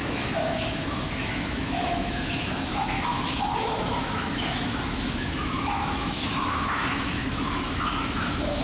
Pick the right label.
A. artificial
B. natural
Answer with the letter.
A